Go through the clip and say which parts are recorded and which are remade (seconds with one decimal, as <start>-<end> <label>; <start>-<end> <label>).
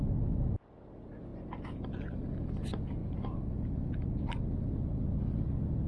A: 0.0-3.0 recorded; 3.0-4.5 remade; 4.5-5.9 recorded